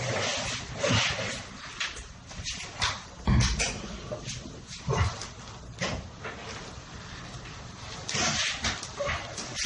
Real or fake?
real